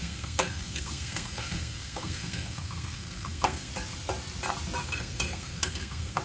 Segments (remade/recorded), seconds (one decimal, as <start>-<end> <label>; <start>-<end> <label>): 0.0-3.7 remade; 3.7-4.8 recorded; 4.8-6.2 remade